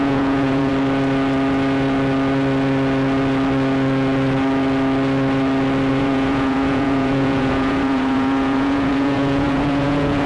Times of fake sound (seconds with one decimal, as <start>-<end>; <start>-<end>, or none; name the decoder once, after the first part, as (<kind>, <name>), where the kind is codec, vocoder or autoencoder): 0.0-0.7 (vocoder, Vocos); 5.9-10.3